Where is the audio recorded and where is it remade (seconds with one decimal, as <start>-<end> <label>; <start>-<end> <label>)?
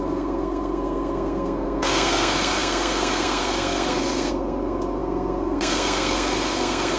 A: 0.0-7.0 remade